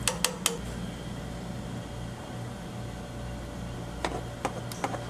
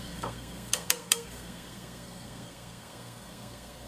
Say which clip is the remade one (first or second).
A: second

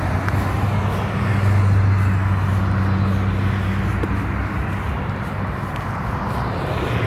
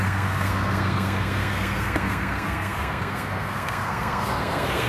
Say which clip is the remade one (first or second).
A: second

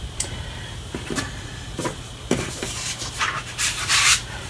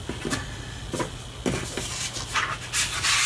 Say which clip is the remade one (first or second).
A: first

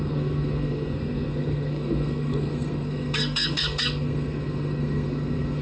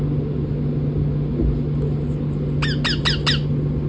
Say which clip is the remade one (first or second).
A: first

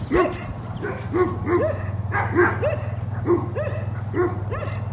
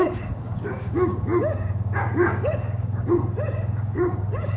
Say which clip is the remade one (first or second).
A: second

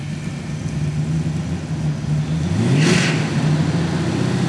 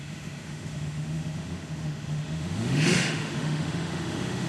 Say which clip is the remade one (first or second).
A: second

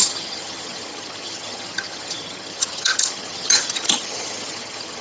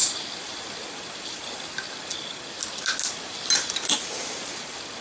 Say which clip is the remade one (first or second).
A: first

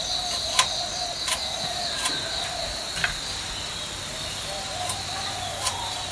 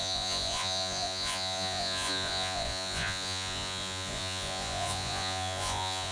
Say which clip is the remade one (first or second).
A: second